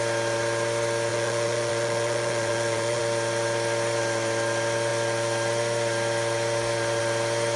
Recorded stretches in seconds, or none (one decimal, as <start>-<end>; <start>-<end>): 0.0-1.1; 3.0-7.6